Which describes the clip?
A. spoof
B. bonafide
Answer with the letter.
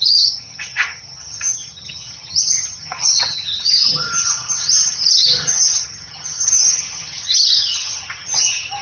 A